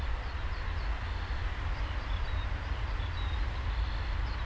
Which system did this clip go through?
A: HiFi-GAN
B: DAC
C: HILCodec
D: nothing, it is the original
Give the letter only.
D